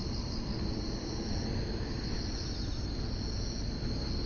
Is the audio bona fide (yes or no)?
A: yes